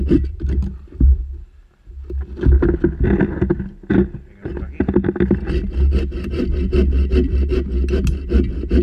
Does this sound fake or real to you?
real